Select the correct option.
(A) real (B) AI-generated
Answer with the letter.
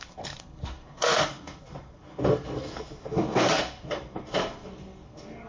B